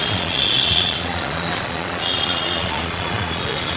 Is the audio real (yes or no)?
no